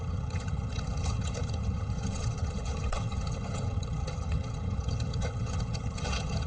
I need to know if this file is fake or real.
fake